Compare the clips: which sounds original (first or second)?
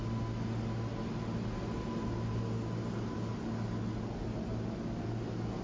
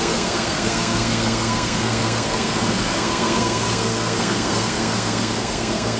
first